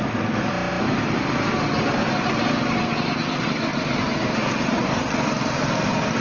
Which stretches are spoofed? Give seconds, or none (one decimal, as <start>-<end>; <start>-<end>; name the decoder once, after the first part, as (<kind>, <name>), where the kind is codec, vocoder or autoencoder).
3.7-5.7 (vocoder, BigVGAN v2)